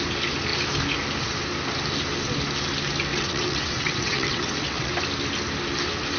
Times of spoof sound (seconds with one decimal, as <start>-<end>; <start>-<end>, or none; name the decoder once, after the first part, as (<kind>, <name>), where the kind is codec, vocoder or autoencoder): 3.1-4.9 (vocoder, WaveNeXt)